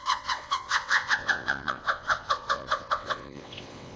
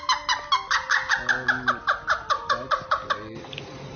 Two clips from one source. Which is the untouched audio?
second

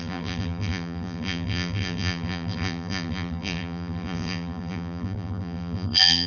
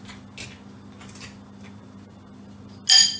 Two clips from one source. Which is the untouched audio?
second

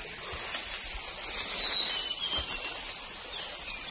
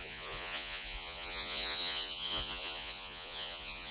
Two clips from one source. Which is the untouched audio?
first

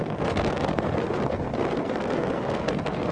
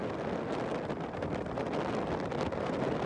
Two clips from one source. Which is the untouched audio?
second